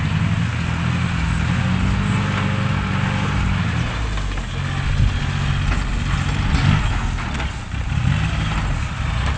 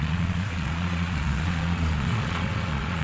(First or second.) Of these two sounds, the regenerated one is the second